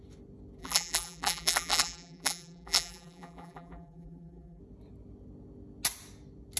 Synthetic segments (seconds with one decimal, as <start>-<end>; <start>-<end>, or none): 0.6-4.6